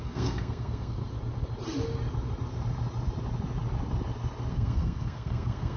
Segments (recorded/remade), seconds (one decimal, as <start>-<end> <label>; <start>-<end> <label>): 0.0-1.0 remade; 1.0-4.5 recorded; 4.5-5.8 remade